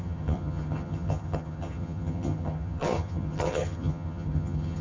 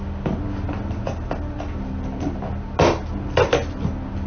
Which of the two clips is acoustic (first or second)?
second